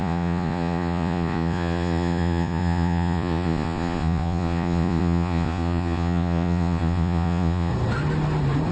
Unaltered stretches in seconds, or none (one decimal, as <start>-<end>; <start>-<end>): 7.7-8.7